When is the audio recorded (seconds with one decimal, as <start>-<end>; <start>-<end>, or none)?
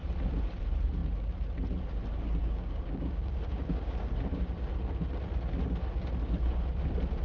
0.0-2.4; 4.1-7.2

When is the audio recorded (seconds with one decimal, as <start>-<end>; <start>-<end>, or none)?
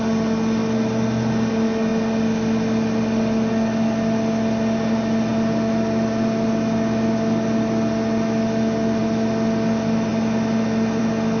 0.0-11.4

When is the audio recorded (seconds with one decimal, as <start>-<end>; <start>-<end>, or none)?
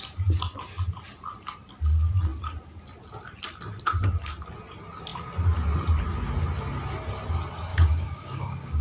0.0-7.7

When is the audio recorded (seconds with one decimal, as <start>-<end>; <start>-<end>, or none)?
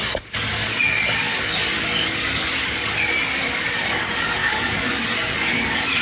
none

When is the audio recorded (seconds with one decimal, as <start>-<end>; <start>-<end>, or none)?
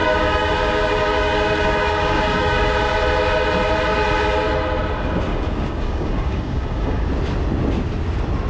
2.7-5.3; 7.1-8.5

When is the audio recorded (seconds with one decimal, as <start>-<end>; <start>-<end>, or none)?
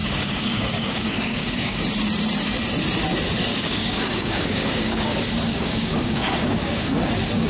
1.8-3.5; 5.1-5.5; 7.0-7.5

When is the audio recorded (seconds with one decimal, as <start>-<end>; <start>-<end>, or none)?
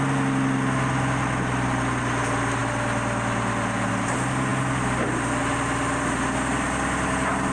0.0-7.5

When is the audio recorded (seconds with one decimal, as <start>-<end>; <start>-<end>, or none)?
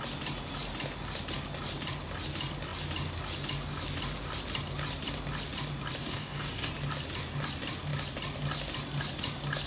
0.0-6.0; 6.7-9.7